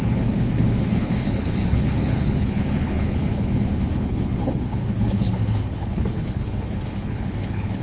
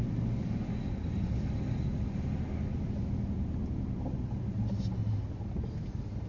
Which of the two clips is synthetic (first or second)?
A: first